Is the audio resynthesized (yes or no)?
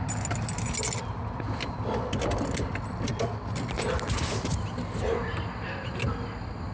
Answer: no